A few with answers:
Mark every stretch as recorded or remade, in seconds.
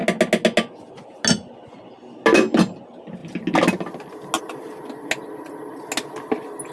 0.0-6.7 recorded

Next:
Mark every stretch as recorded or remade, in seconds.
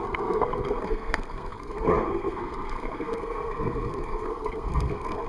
0.0-5.3 remade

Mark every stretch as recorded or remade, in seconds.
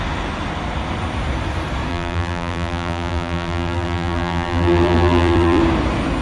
0.0-1.9 recorded; 1.9-5.6 remade; 5.6-6.2 recorded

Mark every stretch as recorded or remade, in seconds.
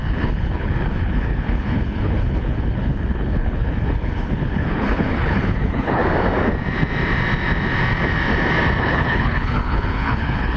0.0-6.0 remade; 6.0-8.8 recorded; 8.8-10.6 remade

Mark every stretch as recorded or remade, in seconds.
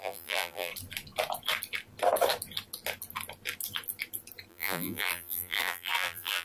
0.0-0.7 remade; 0.7-4.5 recorded; 4.5-6.4 remade